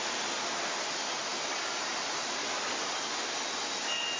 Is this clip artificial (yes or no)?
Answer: no